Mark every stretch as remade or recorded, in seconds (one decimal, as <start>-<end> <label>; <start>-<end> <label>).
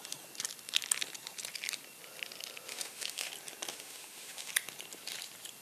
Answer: 0.0-2.7 recorded; 2.7-3.3 remade; 3.3-3.7 recorded; 3.7-4.5 remade; 4.5-5.6 recorded